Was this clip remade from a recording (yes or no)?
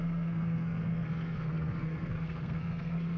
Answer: yes